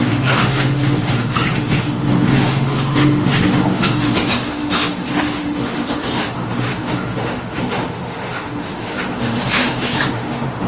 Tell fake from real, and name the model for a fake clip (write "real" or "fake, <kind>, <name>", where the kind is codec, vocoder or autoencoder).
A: fake, autoencoder, DAC-VAE